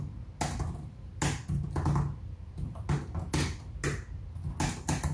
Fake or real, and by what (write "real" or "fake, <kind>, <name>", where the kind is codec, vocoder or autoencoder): real